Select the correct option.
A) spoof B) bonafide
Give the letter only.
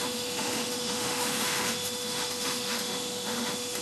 A